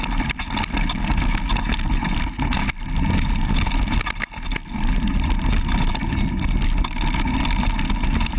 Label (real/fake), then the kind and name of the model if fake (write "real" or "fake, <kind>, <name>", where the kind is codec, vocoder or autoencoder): real